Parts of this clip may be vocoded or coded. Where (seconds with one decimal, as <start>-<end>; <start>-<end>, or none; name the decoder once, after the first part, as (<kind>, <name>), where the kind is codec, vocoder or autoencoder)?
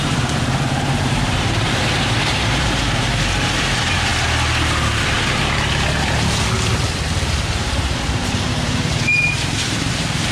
0.0-4.1 (vocoder, BigVGAN v2); 7.5-10.3